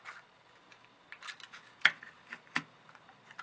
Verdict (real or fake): real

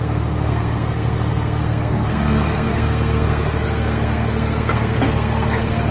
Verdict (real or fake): fake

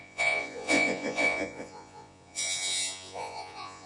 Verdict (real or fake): fake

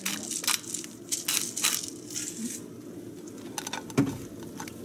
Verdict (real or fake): real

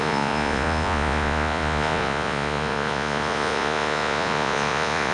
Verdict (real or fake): fake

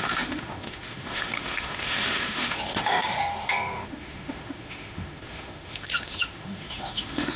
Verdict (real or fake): fake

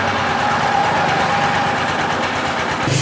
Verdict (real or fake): real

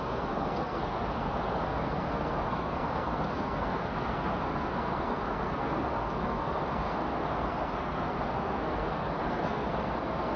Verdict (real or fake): fake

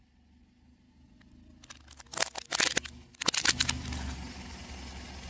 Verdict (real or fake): real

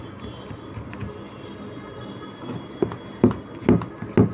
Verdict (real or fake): real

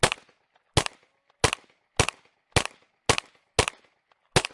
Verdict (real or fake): real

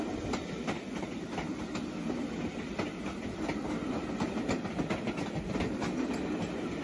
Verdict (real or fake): real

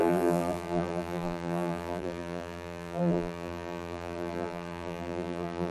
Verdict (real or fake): fake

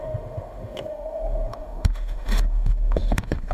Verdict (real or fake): fake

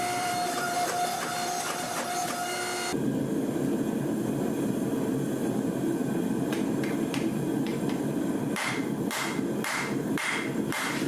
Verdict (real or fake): fake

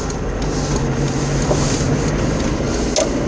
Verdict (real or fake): real